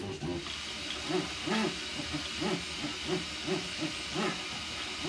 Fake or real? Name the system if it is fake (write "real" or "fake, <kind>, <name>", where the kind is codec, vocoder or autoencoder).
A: real